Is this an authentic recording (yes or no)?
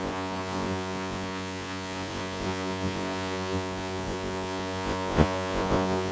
no